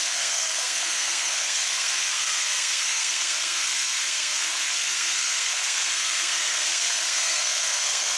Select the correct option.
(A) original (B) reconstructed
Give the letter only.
B